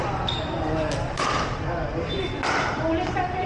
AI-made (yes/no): no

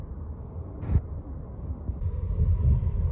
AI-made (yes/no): no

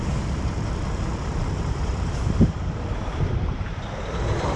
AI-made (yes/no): yes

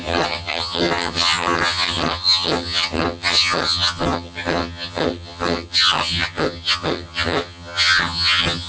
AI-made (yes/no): yes